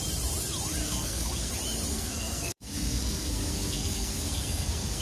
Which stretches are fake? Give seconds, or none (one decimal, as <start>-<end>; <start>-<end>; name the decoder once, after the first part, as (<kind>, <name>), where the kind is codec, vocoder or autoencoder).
0.8-1.5 (codec, SNAC); 1.9-5.0